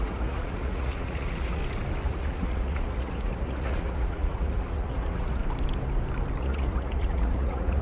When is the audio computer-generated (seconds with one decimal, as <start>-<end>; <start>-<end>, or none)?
0.0-1.6; 2.2-5.4; 6.4-7.8